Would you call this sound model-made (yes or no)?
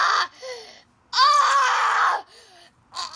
no